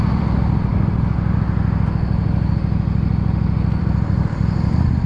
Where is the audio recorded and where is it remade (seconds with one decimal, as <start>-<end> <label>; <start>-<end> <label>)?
0.0-0.7 remade; 0.7-3.8 recorded; 3.8-5.1 remade